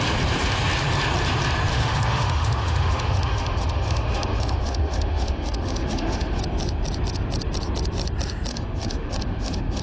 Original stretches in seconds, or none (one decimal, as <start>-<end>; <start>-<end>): 0.0-1.7; 6.4-8.5